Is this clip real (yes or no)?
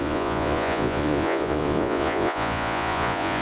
no